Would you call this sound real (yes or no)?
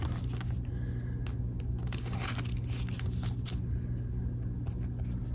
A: yes